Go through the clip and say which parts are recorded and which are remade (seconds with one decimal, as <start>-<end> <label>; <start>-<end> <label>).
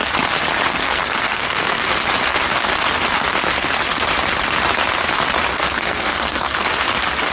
0.0-0.7 recorded; 0.7-1.9 remade; 1.9-5.5 recorded; 5.5-6.7 remade; 6.7-7.3 recorded